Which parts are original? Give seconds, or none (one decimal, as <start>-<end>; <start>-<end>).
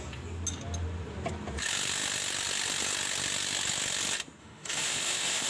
0.0-4.4